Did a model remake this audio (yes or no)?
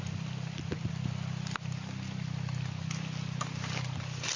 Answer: no